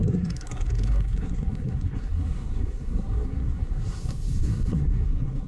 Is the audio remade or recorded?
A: remade